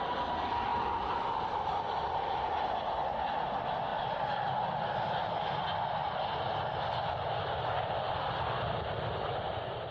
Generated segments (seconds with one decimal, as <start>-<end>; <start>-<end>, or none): 0.7-2.0; 3.9-4.5; 6.0-9.5

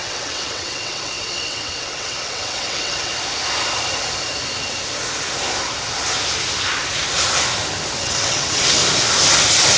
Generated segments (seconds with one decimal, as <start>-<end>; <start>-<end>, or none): 0.0-3.1; 8.0-8.8

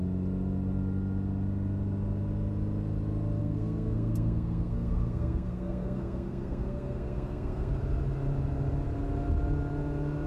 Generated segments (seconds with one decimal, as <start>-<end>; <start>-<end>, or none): 3.4-7.7

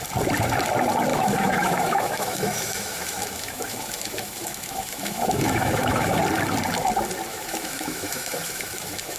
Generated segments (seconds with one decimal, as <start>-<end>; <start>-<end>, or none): 1.1-6.2; 7.3-9.2